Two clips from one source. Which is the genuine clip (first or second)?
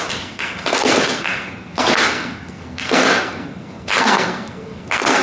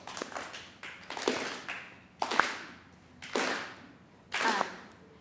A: second